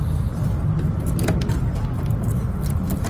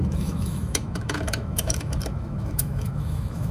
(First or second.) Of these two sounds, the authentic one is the first